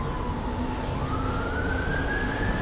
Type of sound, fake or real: real